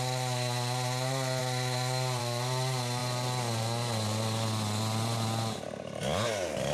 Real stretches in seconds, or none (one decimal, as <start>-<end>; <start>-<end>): 0.0-6.7